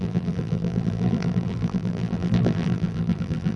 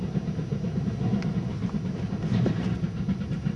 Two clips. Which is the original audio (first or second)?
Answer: second